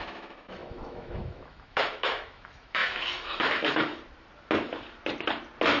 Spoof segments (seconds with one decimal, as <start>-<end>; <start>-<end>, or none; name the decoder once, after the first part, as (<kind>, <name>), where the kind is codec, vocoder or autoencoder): 0.0-3.9 (autoencoder, DAC-VAE)